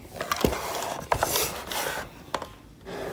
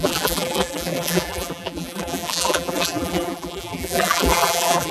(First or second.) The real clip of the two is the first